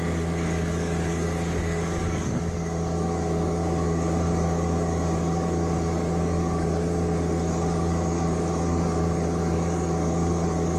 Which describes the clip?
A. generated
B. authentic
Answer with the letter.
A